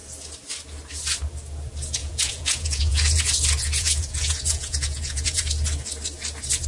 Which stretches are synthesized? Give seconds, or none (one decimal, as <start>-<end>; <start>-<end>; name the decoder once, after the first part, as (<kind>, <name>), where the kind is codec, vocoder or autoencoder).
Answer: 2.0-3.2 (vocoder, Vocos); 3.8-5.4